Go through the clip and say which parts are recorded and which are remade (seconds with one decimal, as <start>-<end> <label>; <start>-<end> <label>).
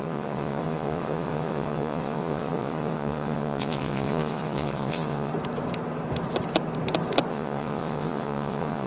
0.0-5.3 remade; 5.3-7.3 recorded; 7.3-8.9 remade